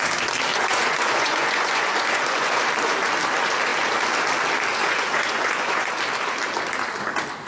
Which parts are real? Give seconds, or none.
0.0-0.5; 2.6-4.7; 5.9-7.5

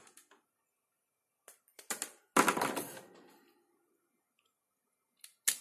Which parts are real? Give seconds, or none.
0.0-5.6

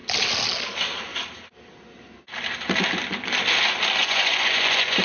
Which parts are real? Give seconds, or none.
0.0-4.0

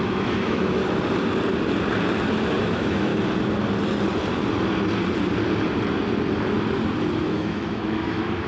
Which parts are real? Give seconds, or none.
0.8-2.6; 3.1-7.2

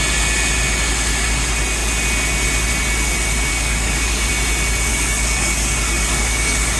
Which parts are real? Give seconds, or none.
0.0-3.5; 4.3-4.9